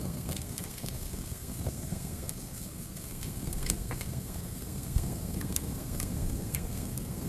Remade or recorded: remade